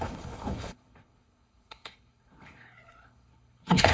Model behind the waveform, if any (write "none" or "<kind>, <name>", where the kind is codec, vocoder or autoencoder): codec, HILCodec